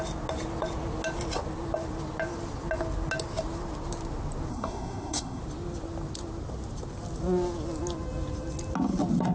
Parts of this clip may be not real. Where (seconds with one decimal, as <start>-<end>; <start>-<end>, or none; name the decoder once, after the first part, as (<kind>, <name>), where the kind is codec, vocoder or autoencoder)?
4.5-5.4 (codec, SNAC)